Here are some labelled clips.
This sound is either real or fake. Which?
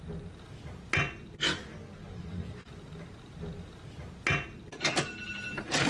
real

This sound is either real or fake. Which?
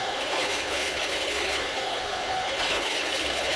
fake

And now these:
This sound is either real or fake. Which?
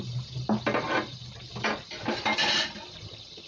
real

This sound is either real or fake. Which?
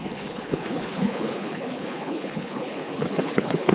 fake